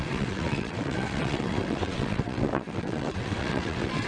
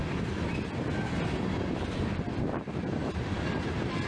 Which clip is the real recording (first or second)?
second